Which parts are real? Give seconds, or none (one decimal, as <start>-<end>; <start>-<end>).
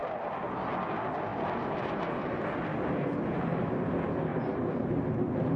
0.0-1.3; 2.0-4.3